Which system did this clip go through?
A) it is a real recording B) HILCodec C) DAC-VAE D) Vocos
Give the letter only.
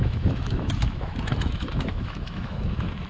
C